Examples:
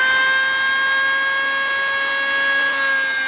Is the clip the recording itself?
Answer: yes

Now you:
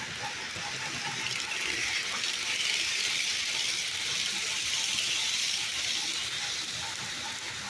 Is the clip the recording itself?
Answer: yes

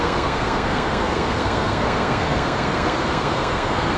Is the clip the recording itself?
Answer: no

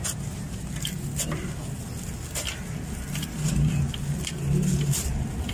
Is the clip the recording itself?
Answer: yes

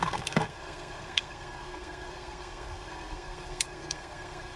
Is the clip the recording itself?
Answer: no